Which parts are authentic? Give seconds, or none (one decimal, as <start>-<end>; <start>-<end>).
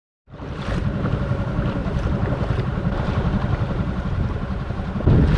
0.0-1.8; 5.0-5.4